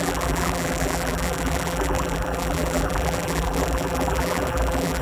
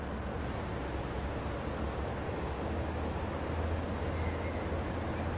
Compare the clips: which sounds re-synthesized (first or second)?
first